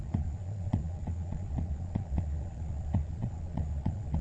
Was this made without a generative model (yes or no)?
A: no